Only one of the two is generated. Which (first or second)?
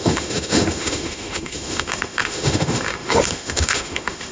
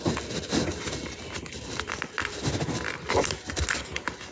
first